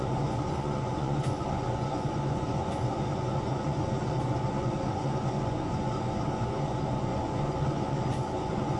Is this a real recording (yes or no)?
no